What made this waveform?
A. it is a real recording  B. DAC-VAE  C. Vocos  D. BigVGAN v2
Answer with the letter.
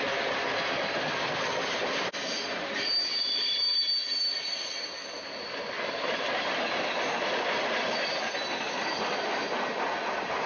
A